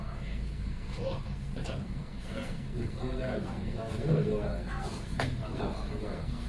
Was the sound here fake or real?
fake